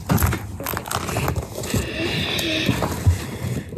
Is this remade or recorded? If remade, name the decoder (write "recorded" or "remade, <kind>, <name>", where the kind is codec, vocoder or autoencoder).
recorded